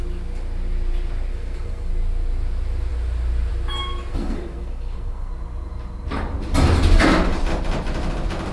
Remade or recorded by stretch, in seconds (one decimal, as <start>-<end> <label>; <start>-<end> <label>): 0.0-1.3 recorded; 1.3-1.9 remade; 1.9-4.1 recorded; 4.1-5.3 remade; 5.3-8.5 recorded